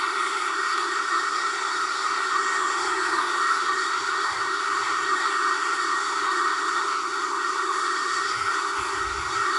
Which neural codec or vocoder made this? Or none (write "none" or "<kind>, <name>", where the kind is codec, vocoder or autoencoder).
codec, SNAC